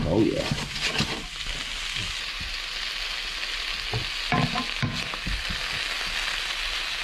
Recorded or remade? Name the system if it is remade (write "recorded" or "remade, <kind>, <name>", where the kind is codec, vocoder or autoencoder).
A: recorded